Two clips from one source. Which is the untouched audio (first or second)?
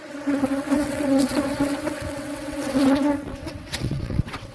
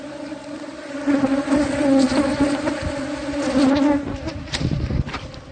second